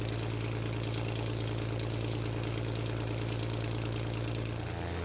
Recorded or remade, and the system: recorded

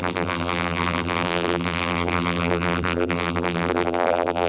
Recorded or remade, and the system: remade, vocoder, BigVGAN v2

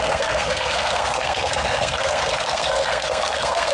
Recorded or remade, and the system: remade, codec, SNAC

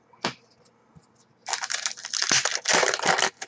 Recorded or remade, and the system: recorded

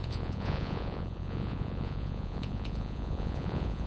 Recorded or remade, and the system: remade, vocoder, Vocos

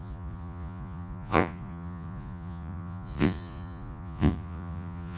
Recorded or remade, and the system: remade, vocoder, Vocos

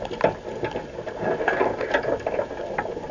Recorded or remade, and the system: recorded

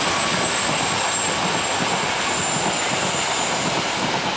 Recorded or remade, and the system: recorded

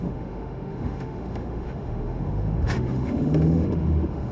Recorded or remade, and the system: remade, autoencoder, DAC-VAE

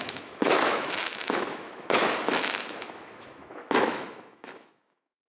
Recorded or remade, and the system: remade, autoencoder, DAC-VAE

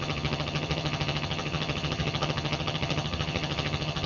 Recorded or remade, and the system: remade, vocoder, HiFi-GAN